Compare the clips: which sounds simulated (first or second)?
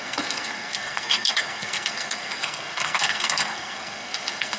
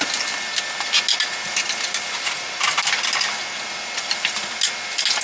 first